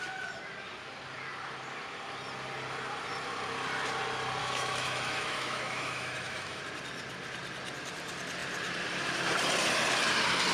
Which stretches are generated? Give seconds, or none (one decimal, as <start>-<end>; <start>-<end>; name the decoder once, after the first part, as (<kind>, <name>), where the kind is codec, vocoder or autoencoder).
4.4-6.6 (autoencoder, DAC-VAE)